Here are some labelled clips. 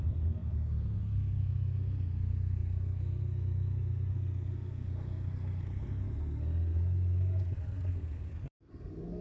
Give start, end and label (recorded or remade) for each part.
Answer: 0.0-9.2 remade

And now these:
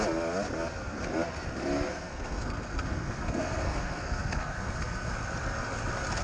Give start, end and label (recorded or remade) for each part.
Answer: 0.0-1.9 recorded; 1.9-5.1 remade; 5.1-6.2 recorded

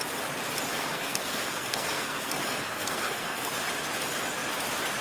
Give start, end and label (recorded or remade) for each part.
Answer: 0.0-0.7 recorded; 0.7-3.5 remade; 3.5-5.0 recorded